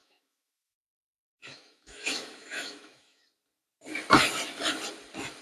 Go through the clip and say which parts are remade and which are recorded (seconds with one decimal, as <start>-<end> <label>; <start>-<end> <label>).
0.0-3.2 remade; 3.2-5.4 recorded